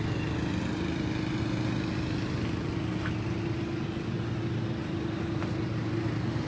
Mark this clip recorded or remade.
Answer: recorded